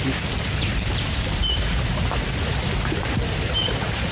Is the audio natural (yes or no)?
no